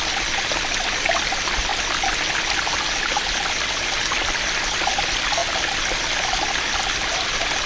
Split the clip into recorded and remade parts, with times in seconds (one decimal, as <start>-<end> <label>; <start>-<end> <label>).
0.0-7.7 recorded